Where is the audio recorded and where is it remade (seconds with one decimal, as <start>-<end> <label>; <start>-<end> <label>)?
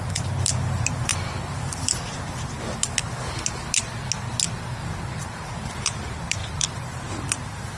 0.0-1.1 remade; 1.1-5.1 recorded; 5.1-7.8 remade